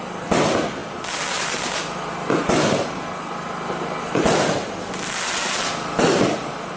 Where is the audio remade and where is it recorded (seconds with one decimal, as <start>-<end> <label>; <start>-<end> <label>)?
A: 0.0-6.8 recorded